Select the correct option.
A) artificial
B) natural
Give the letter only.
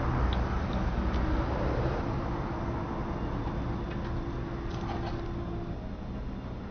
B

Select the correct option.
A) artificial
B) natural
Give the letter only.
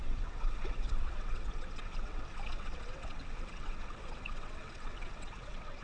A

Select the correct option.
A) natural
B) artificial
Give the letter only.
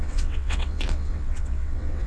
B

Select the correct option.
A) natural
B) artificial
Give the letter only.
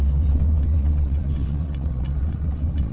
B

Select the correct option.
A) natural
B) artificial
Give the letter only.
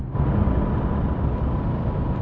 A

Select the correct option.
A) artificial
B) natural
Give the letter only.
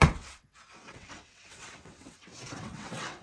A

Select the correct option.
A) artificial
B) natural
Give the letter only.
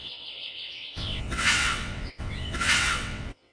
A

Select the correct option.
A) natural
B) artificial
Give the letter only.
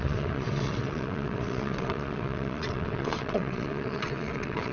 B